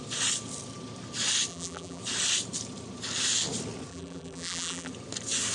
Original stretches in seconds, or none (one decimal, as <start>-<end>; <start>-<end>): 0.0-1.5; 2.0-3.9; 4.9-5.5

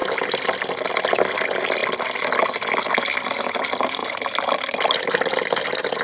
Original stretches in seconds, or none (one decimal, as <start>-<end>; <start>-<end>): 0.0-6.0

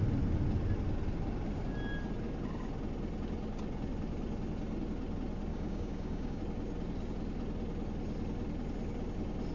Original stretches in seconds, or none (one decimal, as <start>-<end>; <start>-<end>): 0.0-5.5; 6.4-9.5

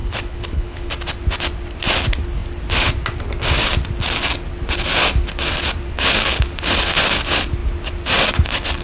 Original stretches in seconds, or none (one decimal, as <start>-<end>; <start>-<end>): 0.9-8.8